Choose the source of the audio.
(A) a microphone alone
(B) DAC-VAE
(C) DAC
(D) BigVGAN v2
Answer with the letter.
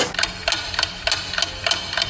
A